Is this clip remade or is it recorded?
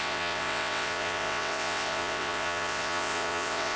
remade